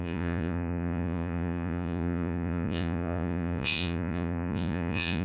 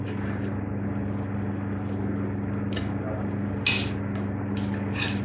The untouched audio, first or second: second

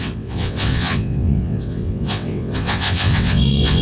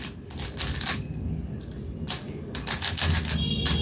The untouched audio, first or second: second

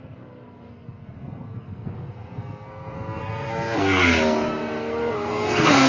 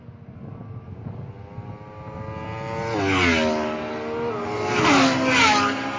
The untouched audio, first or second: second